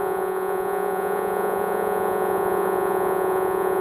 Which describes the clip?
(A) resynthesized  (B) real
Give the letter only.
A